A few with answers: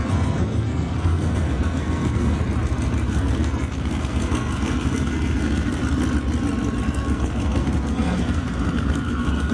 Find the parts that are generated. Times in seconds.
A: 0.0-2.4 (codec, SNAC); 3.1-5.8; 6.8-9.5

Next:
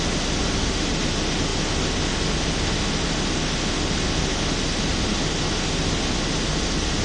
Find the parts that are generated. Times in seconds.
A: none

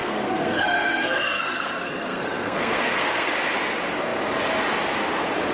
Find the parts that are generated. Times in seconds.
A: 0.0-3.3 (codec, SNAC)

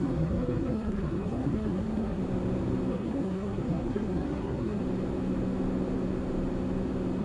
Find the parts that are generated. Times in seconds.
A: 0.0-2.2 (codec, SNAC); 2.9-4.8

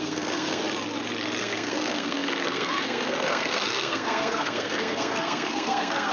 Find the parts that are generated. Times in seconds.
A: 0.0-0.6 (codec, SNAC); 1.4-6.1